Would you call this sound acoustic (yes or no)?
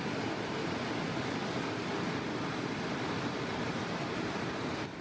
yes